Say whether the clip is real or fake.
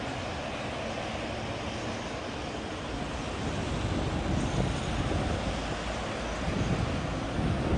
real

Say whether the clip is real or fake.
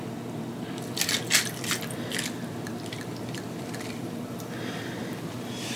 fake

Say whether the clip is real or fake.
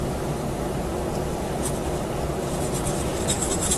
fake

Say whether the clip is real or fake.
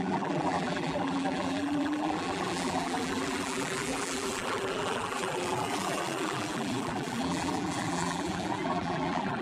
fake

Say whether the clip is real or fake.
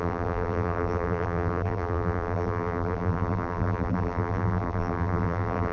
fake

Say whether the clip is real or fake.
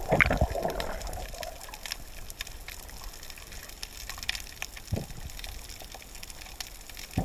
real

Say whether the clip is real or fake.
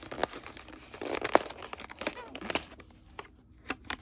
real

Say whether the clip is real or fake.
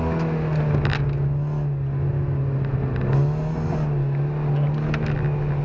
real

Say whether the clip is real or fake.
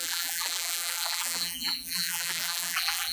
fake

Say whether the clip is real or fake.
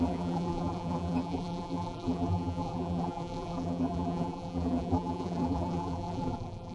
fake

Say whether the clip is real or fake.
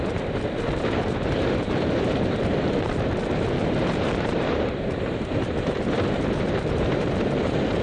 fake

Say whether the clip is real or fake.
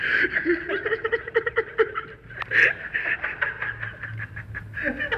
real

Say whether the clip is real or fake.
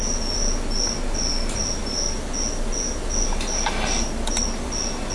real